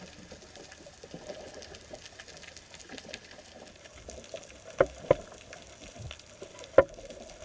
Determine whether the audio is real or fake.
real